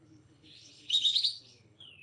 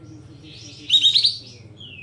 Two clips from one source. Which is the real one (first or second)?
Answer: second